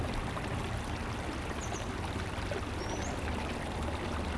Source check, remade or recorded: recorded